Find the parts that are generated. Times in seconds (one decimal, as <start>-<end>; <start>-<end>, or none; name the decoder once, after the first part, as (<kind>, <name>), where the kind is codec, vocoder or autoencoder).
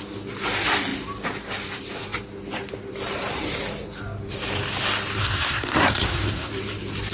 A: 5.2-6.5 (codec, SNAC)